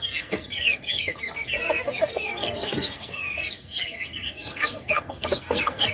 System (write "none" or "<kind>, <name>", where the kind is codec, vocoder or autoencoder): codec, SNAC